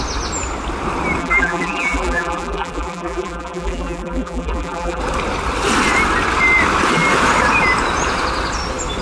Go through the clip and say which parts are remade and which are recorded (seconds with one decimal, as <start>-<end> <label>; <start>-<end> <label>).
0.0-1.2 recorded; 1.2-5.0 remade; 5.0-9.0 recorded

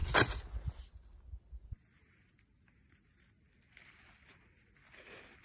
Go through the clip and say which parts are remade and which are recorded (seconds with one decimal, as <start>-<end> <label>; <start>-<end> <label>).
0.0-5.4 recorded

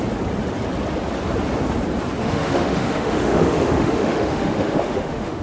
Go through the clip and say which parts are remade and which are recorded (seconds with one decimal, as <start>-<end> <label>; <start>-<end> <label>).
0.0-2.2 recorded; 2.2-5.4 remade

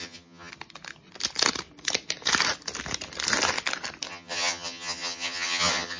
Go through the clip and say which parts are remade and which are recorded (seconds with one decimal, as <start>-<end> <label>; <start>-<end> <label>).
0.0-0.5 remade; 0.5-4.1 recorded; 4.1-6.0 remade

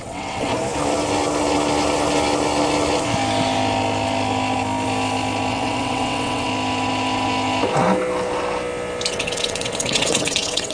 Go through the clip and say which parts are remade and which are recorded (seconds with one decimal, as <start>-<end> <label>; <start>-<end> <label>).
0.0-0.5 remade; 0.5-5.5 recorded; 5.5-6.5 remade; 6.5-9.1 recorded; 9.1-10.7 remade

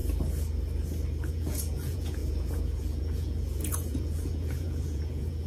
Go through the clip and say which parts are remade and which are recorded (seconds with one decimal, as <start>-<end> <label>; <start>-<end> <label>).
0.0-1.3 recorded; 1.3-5.5 remade